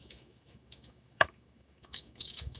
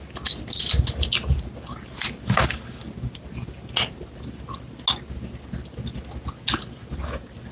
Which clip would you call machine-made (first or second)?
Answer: first